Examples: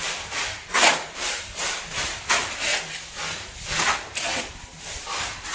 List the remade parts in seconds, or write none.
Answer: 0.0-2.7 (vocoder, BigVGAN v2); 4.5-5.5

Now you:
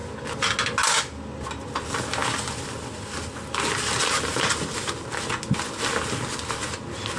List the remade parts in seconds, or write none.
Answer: none

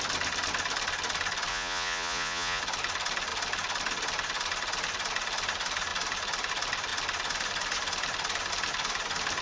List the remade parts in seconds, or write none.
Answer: 1.5-2.6 (vocoder, Vocos)

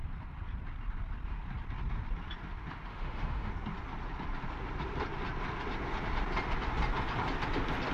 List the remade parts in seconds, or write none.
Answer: 2.9-3.5 (autoencoder, DAC-VAE)

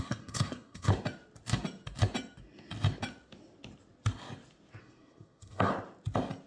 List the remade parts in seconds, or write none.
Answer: 0.0-0.9 (codec, SNAC); 4.8-5.7

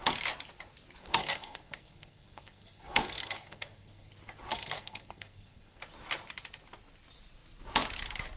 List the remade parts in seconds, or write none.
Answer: 1.0-4.1 (codec, SNAC); 4.5-5.8